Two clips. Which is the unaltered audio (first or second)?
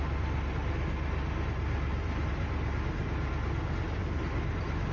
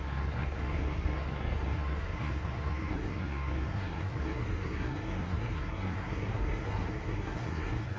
first